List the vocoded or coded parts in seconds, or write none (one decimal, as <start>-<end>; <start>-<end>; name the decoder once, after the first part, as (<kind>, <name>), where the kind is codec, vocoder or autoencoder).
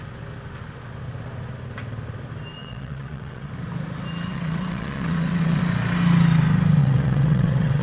2.6-3.5 (vocoder, WaveNeXt); 4.3-5.6; 6.8-7.8